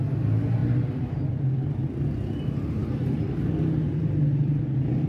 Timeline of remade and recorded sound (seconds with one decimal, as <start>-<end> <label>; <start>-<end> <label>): 0.0-0.6 recorded; 0.6-1.8 remade; 1.8-2.8 recorded; 2.8-4.6 remade; 4.6-5.1 recorded